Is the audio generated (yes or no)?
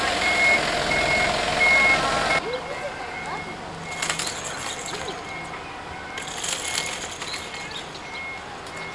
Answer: no